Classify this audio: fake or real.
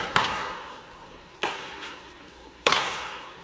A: fake